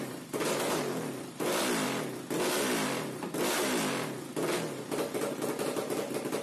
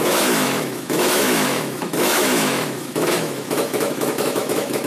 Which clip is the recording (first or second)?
first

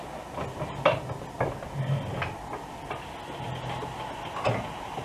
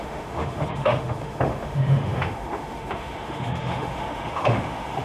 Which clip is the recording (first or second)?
first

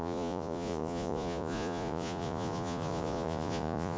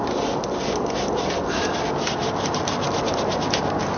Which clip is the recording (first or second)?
second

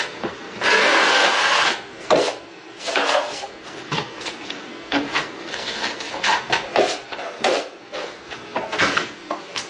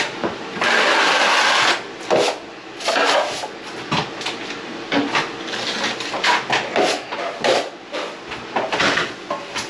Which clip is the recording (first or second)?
second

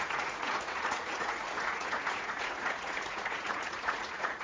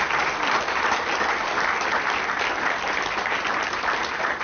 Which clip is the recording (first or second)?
second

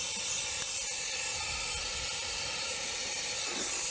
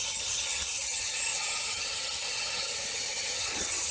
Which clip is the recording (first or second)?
first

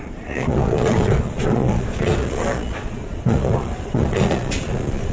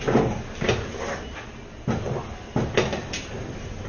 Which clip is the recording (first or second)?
second